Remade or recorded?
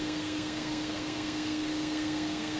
remade